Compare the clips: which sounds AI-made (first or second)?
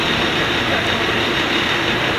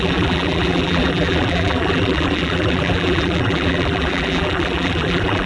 second